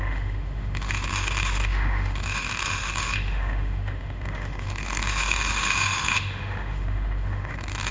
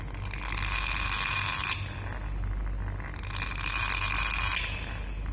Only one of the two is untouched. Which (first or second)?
second